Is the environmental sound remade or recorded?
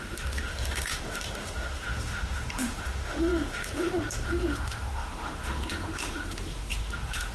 remade